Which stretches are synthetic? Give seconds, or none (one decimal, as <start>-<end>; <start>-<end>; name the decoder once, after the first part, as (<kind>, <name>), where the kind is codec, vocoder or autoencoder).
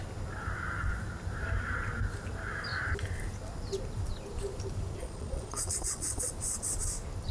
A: 5.0-6.3 (vocoder, Vocos)